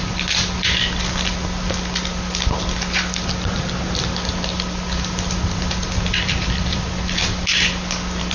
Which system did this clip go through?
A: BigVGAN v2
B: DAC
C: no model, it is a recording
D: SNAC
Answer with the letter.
C